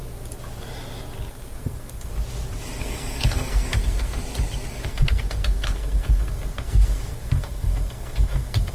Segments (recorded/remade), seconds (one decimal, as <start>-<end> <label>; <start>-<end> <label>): 0.0-1.3 recorded; 1.3-2.1 remade; 2.1-2.8 recorded; 2.8-4.2 remade; 4.2-4.7 recorded; 4.7-8.7 remade